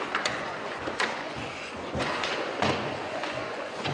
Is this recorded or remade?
remade